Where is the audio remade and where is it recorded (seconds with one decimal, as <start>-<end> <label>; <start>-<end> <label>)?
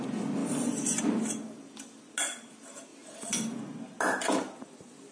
0.0-5.1 recorded